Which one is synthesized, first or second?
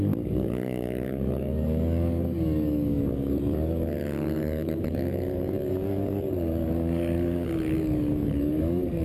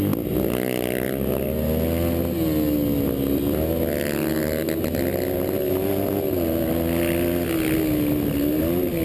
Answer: first